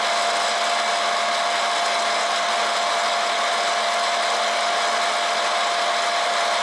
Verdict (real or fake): real